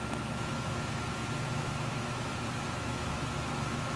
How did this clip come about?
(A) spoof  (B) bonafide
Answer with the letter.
A